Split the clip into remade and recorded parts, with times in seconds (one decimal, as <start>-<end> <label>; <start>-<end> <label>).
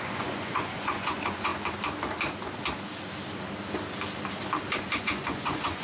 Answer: 0.0-1.5 remade; 1.5-5.0 recorded; 5.0-5.8 remade